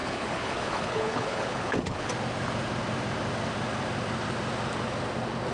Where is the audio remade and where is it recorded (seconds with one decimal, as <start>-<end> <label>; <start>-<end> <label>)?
0.0-2.1 remade; 2.1-5.5 recorded